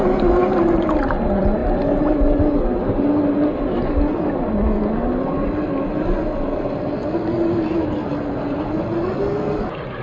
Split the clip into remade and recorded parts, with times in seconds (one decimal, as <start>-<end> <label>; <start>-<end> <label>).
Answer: 0.0-10.0 recorded